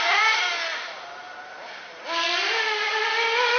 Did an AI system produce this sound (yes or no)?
no